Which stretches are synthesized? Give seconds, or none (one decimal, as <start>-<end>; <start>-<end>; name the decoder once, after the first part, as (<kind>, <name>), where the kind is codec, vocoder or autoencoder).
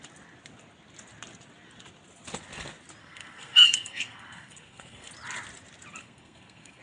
3.0-5.1 (codec, SNAC); 6.0-6.8